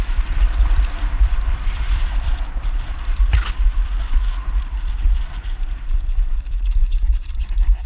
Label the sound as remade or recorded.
remade